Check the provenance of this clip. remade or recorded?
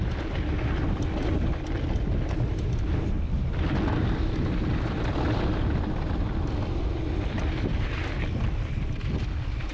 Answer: recorded